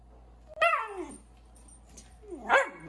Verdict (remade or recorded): recorded